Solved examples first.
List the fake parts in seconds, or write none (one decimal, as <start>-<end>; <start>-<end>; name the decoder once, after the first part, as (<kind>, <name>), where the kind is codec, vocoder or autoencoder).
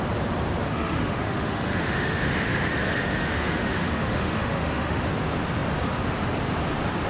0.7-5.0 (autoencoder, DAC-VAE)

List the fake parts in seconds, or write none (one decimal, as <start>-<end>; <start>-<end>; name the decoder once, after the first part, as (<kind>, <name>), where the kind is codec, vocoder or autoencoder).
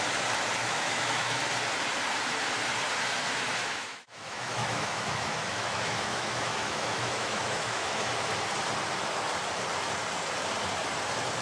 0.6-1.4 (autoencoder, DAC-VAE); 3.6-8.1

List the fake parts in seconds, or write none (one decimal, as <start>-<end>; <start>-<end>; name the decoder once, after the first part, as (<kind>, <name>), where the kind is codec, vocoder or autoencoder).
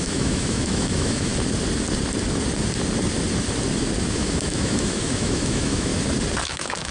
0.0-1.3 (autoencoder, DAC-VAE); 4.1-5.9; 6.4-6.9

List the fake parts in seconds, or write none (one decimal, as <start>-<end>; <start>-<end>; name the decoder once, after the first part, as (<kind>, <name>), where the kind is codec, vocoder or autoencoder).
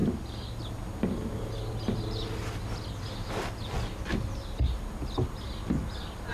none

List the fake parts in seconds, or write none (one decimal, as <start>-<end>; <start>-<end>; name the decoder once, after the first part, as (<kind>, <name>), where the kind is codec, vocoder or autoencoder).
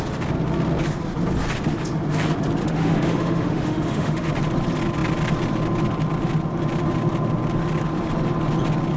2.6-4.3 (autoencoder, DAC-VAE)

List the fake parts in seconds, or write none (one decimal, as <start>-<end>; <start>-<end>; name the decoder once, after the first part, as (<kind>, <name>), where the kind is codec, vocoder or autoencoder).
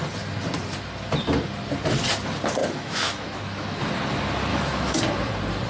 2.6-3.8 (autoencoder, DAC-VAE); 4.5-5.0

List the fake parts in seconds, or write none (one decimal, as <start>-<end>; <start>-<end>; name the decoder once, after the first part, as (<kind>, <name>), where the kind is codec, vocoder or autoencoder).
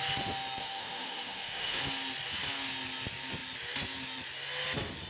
0.6-1.8 (autoencoder, DAC-VAE)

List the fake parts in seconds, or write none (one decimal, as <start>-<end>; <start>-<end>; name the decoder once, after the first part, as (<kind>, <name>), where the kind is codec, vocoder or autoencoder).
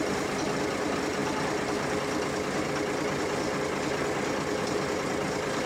none